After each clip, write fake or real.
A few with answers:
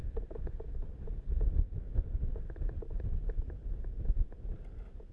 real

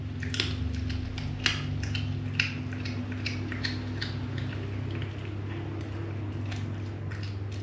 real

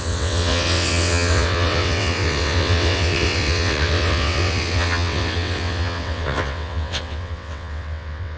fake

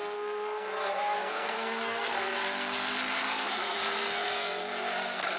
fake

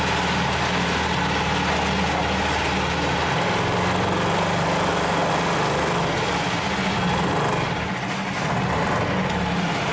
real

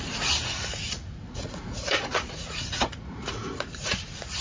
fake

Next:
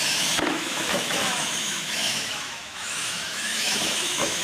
fake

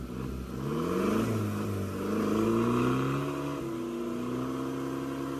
real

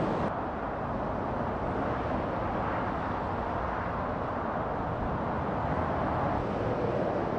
real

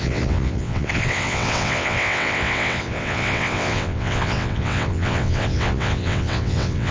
fake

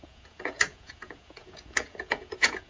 fake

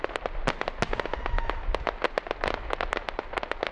real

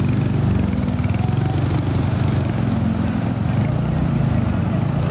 real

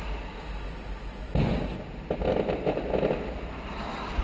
real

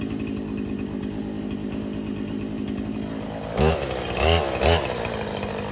real